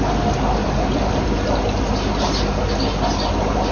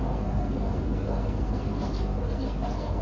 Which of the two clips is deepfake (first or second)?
second